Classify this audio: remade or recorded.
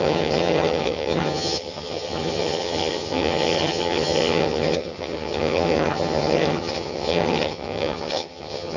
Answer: remade